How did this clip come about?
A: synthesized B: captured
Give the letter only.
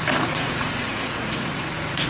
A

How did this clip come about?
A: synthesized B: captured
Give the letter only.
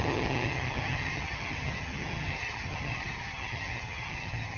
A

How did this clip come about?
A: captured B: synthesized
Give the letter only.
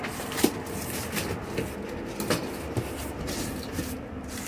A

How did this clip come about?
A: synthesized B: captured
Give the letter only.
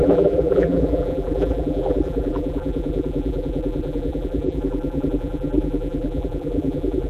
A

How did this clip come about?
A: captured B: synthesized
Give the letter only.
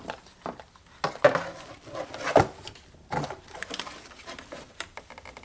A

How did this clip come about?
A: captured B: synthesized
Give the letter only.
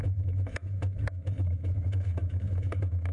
B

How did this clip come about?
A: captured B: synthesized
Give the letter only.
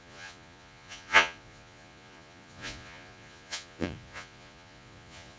B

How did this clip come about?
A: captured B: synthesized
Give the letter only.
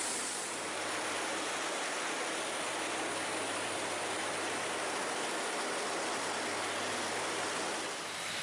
A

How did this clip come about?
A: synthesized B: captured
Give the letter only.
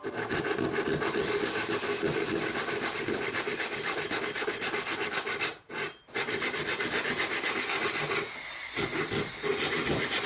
B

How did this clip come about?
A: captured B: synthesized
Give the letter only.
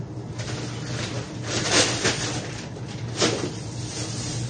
A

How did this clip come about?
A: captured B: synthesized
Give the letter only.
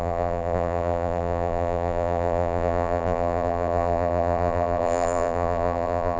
B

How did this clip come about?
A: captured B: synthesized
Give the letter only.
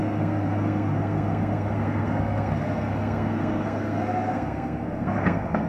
B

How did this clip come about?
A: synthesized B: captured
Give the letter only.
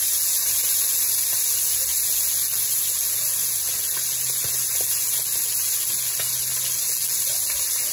B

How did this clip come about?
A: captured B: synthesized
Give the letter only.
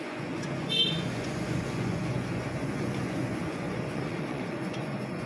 B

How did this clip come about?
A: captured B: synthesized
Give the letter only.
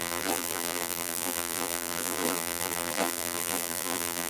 B